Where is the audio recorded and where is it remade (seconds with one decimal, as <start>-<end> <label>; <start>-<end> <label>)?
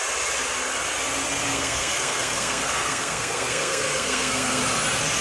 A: 0.0-1.5 recorded; 1.5-4.6 remade; 4.6-5.2 recorded